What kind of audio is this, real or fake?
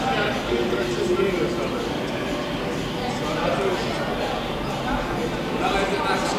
real